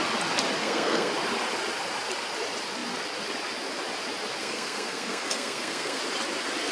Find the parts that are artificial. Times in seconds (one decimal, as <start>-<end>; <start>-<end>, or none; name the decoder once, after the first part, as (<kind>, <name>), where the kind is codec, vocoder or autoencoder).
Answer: 0.6-1.1 (codec, SNAC); 4.4-6.0